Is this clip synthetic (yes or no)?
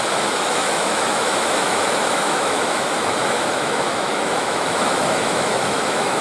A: yes